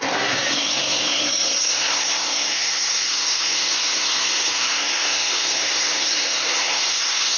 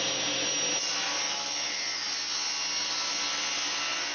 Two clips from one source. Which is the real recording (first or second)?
second